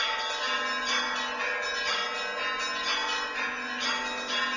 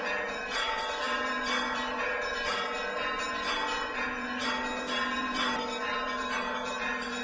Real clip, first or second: first